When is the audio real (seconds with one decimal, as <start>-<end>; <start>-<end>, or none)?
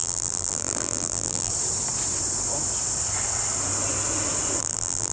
1.5-4.6